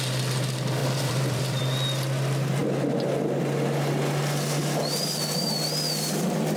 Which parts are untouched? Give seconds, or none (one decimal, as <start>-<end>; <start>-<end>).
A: 0.0-0.8; 1.6-6.6